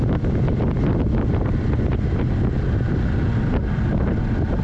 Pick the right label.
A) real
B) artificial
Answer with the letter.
A